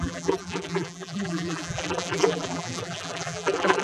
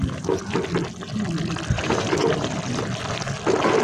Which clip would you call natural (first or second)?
second